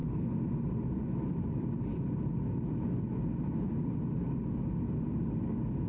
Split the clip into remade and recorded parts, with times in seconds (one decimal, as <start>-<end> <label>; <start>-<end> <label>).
0.0-3.1 remade; 3.1-5.9 recorded